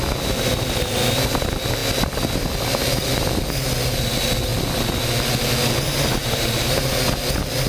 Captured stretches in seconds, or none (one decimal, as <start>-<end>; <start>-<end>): 0.0-6.2; 6.9-7.7